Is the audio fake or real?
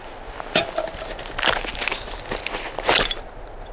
real